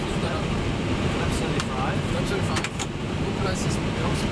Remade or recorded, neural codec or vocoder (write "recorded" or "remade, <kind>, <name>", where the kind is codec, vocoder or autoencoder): recorded